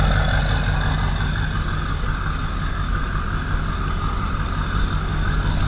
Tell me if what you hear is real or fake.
real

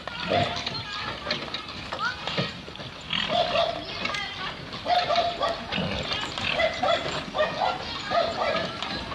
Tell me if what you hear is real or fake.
real